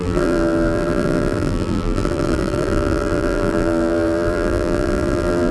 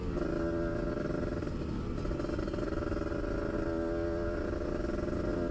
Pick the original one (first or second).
second